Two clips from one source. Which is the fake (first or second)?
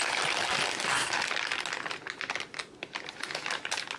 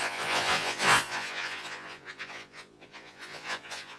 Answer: second